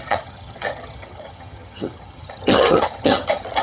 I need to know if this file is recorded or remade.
remade